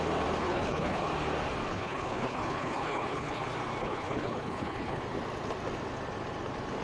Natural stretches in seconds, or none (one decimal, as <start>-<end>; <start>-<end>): 0.0-0.4; 1.1-1.7; 3.4-3.8; 5.0-6.8